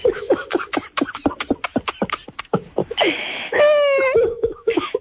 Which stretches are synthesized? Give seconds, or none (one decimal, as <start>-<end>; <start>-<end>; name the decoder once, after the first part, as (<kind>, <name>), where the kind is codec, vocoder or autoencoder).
0.0-0.6 (autoencoder, DAC-VAE); 2.8-5.0